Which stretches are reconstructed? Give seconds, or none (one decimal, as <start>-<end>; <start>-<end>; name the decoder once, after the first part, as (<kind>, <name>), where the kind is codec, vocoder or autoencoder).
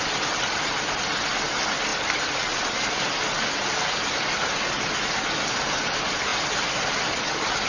1.9-2.8 (vocoder, BigVGAN v2)